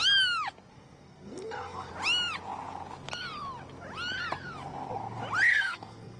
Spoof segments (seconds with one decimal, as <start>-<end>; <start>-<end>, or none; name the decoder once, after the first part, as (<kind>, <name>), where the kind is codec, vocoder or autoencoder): 0.7-1.9 (codec, SNAC); 5.5-6.2